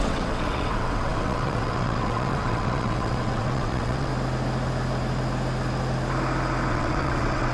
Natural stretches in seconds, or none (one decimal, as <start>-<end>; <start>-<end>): 4.1-6.7